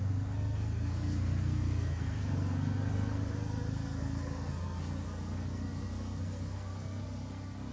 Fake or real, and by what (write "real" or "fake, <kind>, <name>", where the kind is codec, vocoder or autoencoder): fake, codec, SNAC